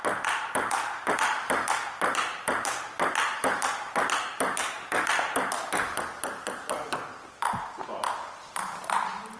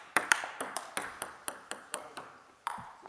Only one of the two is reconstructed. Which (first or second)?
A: second